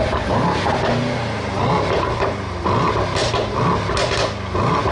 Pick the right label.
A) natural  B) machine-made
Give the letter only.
A